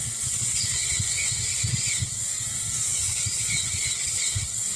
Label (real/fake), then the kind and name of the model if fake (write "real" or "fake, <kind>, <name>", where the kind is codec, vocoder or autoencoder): fake, vocoder, WaveNeXt